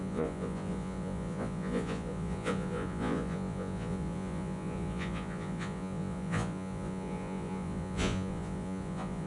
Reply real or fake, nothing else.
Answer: fake